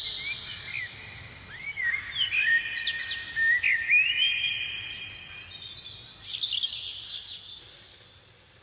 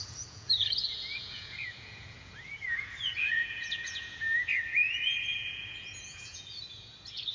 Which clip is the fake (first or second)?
second